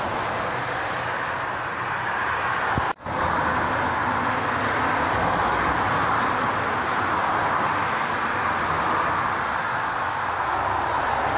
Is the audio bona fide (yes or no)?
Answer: yes